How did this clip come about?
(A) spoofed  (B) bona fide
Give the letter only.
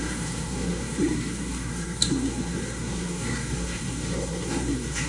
A